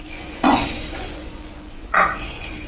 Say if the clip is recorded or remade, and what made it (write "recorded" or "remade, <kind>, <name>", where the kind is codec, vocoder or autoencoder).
remade, vocoder, Vocos